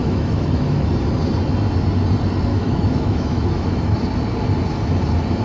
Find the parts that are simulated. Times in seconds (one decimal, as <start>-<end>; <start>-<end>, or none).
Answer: 0.0-0.9; 2.5-4.0